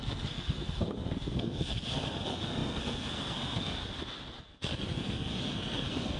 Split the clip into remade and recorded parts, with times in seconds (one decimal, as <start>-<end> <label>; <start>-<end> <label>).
0.0-3.8 remade; 3.8-4.4 recorded; 4.4-6.2 remade